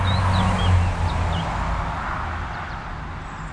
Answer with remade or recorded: recorded